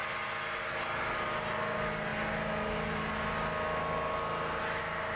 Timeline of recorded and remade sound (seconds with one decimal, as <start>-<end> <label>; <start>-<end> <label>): 0.0-5.2 recorded